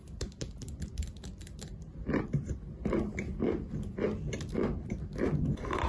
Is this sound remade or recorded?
remade